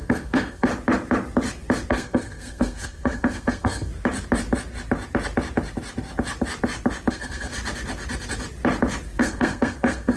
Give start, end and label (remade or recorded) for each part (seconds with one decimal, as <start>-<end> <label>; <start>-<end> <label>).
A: 0.0-0.7 remade; 0.7-1.9 recorded; 1.9-3.9 remade; 3.9-7.1 recorded; 7.1-7.5 remade; 7.5-9.2 recorded; 9.2-10.2 remade